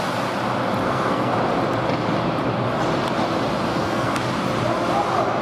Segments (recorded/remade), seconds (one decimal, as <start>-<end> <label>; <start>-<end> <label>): 0.0-0.8 recorded; 0.8-1.3 remade; 1.3-3.7 recorded; 3.7-4.2 remade; 4.2-5.4 recorded